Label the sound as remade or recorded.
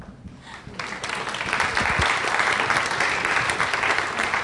recorded